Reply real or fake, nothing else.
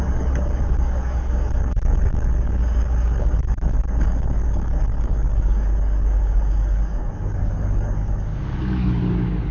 fake